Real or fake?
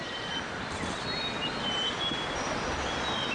real